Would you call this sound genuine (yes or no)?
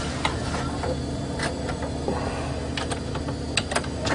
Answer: yes